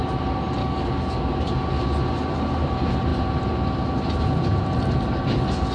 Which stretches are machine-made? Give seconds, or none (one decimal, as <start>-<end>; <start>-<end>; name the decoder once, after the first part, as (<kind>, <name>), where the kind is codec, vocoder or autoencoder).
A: 0.6-1.2 (codec, DAC)

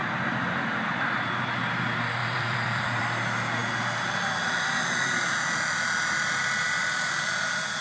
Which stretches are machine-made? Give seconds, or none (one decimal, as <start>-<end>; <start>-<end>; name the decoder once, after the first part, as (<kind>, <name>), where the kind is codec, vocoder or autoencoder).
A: 0.0-1.4 (vocoder, BigVGAN v2); 2.2-3.0

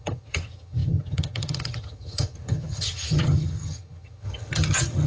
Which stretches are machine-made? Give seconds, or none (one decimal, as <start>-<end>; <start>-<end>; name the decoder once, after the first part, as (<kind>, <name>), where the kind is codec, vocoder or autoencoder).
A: 0.0-5.1 (vocoder, HiFi-GAN)

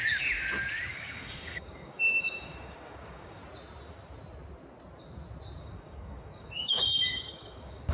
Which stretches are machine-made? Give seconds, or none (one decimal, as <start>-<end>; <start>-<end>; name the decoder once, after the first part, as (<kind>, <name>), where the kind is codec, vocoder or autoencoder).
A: 0.9-3.4 (codec, DAC); 5.6-7.9